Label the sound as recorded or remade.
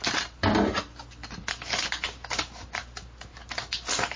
recorded